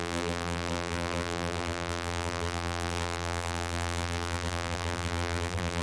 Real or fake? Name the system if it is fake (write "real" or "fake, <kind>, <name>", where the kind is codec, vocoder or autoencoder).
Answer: fake, vocoder, BigVGAN v2